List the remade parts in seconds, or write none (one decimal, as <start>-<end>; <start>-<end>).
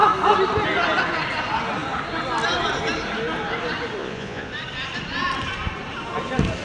4.0-4.5